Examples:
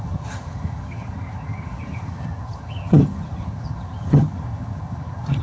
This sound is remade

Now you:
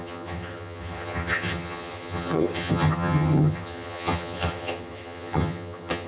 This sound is remade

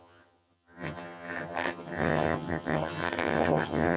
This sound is remade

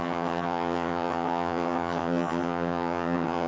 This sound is remade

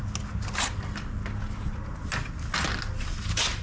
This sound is recorded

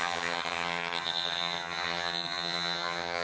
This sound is remade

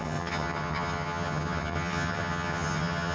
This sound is remade